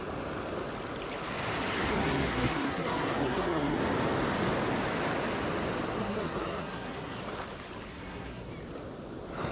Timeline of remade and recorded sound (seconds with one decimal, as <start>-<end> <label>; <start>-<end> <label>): 0.0-1.9 recorded; 1.9-3.8 remade; 3.8-6.0 recorded; 6.0-7.2 remade; 7.2-7.9 recorded; 7.9-8.5 remade; 8.5-9.5 recorded